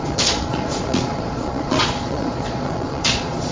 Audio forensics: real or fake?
fake